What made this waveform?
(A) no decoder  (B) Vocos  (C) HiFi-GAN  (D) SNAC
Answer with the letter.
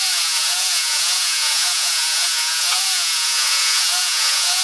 B